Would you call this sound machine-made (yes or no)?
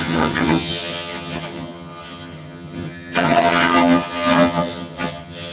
yes